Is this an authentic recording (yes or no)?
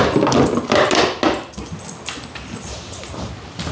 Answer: yes